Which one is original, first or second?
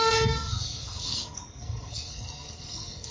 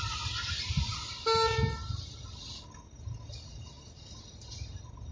second